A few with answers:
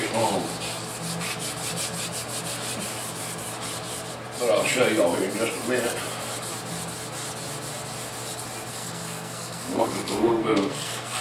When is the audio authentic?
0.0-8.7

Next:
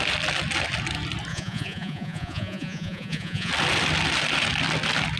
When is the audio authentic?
0.0-1.3; 3.5-5.2

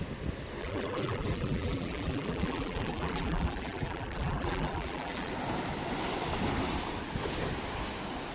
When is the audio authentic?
0.0-0.6; 5.3-8.3

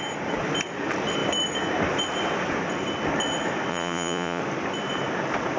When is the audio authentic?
0.0-3.7; 4.4-5.6

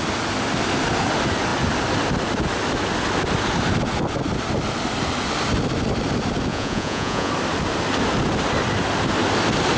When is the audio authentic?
0.0-6.5; 7.3-9.8

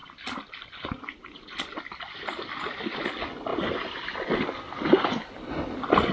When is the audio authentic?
0.0-6.1

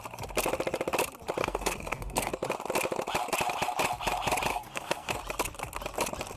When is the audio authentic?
0.0-1.4; 2.3-4.5; 5.1-6.4